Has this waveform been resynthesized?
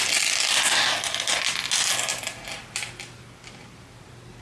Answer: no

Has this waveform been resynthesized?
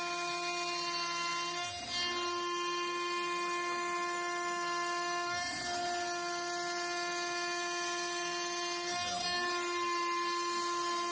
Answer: no